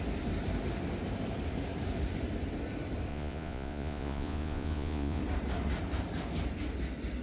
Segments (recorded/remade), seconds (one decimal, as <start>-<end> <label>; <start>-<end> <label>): 0.0-3.1 recorded; 3.1-5.2 remade; 5.2-7.2 recorded